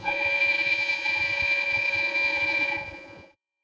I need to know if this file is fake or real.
fake